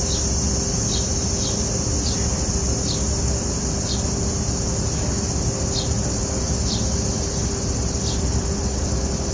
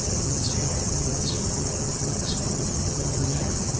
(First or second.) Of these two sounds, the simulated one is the second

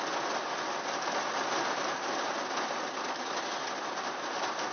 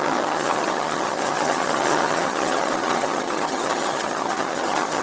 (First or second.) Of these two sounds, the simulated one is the second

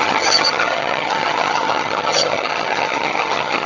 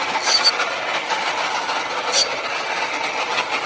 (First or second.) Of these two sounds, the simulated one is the first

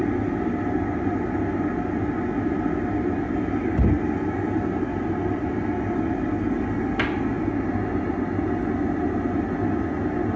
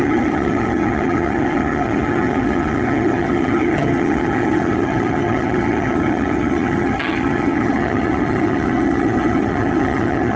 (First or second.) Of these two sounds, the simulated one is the second